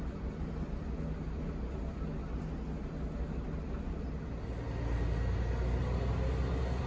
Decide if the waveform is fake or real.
real